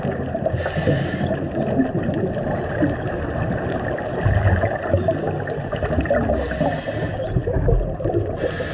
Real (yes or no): yes